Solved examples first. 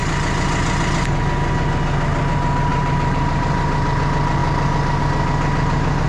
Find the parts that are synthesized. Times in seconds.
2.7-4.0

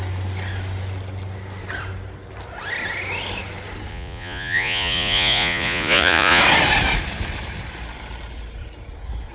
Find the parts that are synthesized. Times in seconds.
3.9-6.4

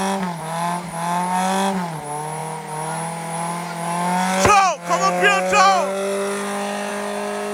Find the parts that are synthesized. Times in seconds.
none

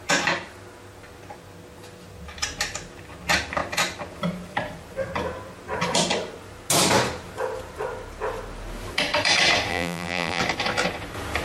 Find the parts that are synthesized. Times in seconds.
9.7-10.4

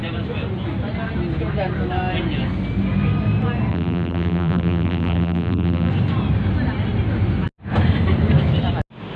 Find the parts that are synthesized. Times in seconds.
3.7-5.9

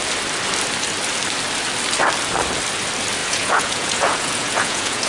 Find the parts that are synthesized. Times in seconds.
3.2-5.1

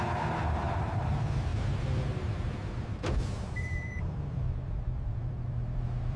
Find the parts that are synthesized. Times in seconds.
0.0-6.2